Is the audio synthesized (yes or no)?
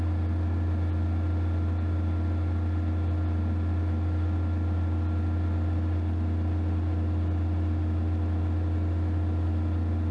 no